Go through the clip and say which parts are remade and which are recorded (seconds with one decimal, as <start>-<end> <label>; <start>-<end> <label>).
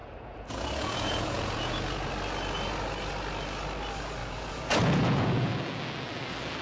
0.0-2.1 remade; 2.1-4.2 recorded; 4.2-5.5 remade; 5.5-6.6 recorded